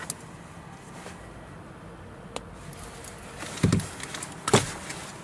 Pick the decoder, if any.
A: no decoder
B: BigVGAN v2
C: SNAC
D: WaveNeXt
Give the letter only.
A